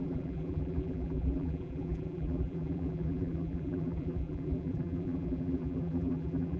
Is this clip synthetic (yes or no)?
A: yes